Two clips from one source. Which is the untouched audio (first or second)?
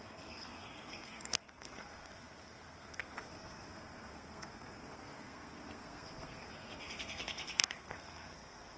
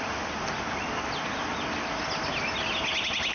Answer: second